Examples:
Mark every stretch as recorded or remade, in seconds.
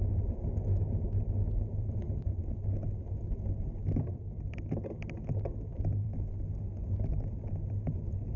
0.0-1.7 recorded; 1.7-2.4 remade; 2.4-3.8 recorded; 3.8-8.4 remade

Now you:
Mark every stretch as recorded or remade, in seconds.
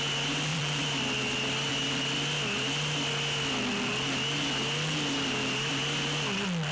0.0-0.5 recorded; 0.5-1.2 remade; 1.2-6.7 recorded